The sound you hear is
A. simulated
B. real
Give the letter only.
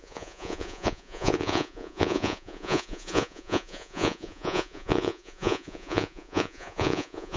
A